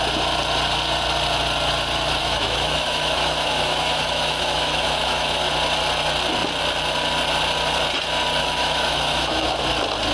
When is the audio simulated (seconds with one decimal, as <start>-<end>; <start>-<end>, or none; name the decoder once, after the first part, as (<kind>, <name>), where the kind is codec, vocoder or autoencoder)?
2.2-5.5 (autoencoder, DAC-VAE); 8.4-9.6